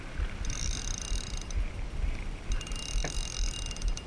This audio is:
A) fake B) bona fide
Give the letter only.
B